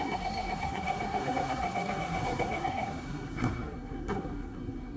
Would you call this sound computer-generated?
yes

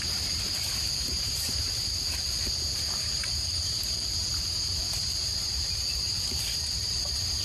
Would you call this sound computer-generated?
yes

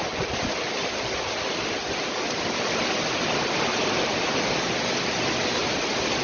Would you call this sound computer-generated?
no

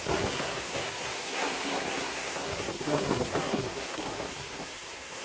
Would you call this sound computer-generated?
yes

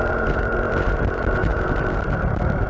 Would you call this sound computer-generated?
yes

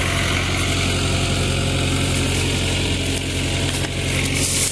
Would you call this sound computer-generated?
no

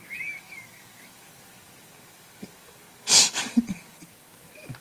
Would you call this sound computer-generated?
yes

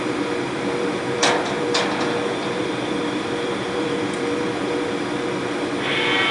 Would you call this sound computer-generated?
yes